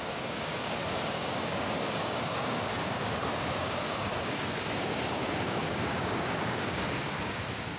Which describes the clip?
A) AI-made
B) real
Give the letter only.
A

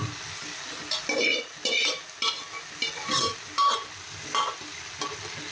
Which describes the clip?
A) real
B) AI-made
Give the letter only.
A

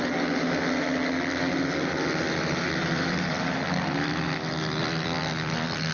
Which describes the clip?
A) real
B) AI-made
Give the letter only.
A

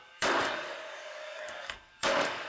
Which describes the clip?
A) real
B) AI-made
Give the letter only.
B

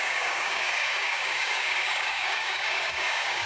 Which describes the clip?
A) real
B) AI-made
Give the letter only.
B